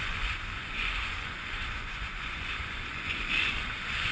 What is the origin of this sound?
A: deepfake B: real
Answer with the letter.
A